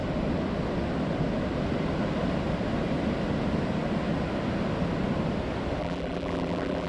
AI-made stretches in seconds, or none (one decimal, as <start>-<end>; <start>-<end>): 5.8-6.9

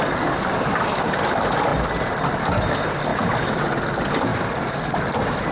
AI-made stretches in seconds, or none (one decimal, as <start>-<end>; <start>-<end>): 1.7-2.4; 3.1-3.6; 4.3-5.5

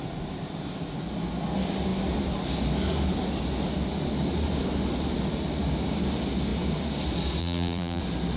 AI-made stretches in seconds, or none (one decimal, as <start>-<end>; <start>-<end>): 7.4-8.0